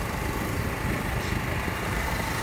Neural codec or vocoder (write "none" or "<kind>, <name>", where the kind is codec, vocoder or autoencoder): vocoder, BigVGAN v2